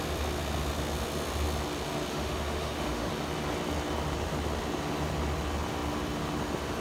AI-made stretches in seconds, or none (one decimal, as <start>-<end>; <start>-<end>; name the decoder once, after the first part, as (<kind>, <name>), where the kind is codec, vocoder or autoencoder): 2.1-3.1 (autoencoder, DAC-VAE)